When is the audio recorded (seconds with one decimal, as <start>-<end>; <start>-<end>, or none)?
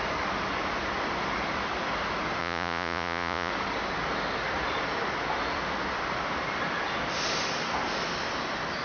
0.0-2.4; 3.5-8.8